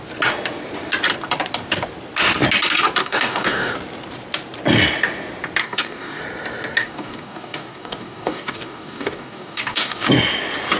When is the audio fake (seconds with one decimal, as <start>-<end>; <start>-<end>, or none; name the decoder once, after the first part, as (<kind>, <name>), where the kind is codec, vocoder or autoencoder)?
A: 3.0-3.7 (codec, DAC); 5.6-6.2; 6.8-10.1